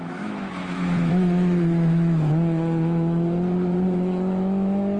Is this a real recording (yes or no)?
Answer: no